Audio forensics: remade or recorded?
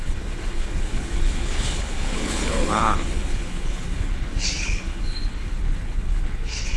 remade